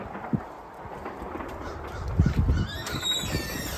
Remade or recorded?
remade